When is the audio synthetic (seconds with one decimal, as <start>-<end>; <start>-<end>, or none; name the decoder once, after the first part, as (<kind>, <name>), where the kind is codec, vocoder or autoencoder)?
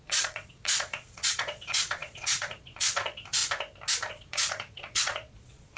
0.0-3.4 (vocoder, Vocos); 4.1-5.8